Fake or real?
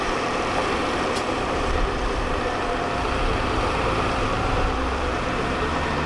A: fake